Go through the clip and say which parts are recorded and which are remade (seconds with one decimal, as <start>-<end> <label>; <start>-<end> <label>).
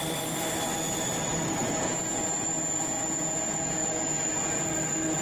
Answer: 0.0-1.6 recorded; 1.6-4.7 remade; 4.7-5.2 recorded